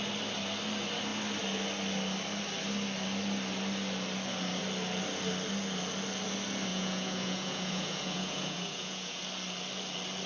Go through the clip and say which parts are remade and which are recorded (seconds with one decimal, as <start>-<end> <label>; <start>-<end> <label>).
0.0-6.7 recorded; 6.7-9.2 remade; 9.2-10.3 recorded